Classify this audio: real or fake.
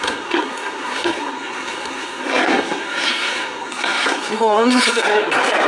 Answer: fake